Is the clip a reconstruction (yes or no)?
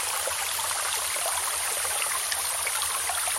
no